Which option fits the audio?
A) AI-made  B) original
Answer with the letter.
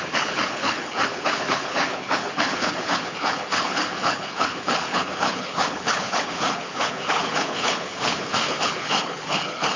A